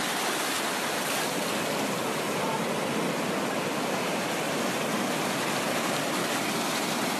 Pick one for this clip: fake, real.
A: real